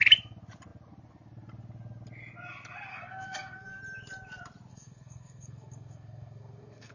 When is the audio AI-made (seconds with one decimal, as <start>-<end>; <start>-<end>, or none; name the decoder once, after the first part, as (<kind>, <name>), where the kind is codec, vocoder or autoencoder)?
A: 2.9-3.8 (codec, SNAC); 4.7-6.9